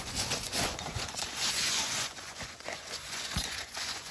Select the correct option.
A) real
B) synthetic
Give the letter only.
B